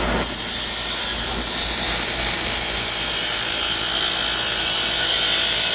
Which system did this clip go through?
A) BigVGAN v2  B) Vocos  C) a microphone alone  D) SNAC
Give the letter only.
C